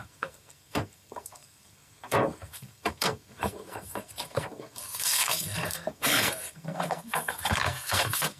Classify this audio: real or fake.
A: fake